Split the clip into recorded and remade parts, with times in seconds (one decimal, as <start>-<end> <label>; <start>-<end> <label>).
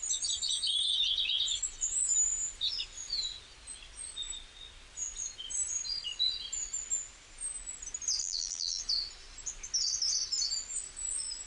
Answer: 0.0-8.2 recorded; 8.2-8.8 remade; 8.8-11.5 recorded